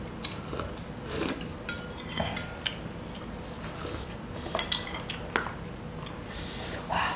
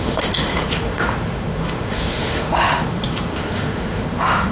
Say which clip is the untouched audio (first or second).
first